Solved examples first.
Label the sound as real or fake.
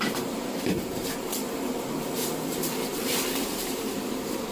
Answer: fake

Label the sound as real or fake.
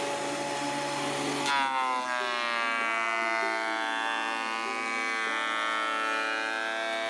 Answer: real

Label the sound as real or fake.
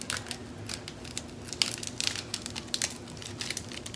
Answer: real